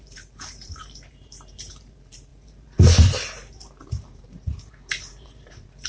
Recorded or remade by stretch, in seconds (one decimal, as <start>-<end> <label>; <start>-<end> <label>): 0.0-5.9 remade